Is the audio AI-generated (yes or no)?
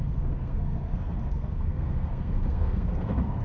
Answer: yes